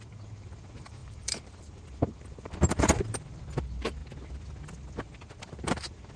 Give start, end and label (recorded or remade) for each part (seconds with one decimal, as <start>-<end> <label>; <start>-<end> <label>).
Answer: 0.0-4.0 remade; 4.0-5.4 recorded; 5.4-6.2 remade